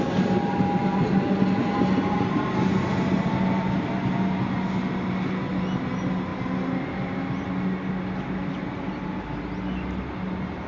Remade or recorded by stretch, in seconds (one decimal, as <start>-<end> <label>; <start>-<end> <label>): 0.0-10.7 recorded